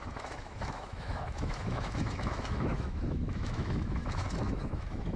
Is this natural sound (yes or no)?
no